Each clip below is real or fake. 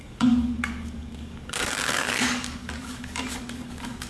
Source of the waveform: fake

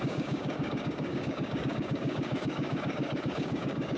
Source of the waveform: fake